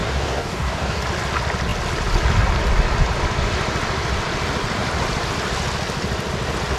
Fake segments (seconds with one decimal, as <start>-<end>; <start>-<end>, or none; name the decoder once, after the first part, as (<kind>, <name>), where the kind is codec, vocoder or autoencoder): 0.0-1.0 (codec, DAC)